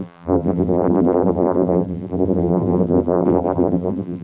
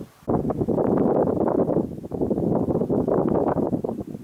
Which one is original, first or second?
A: second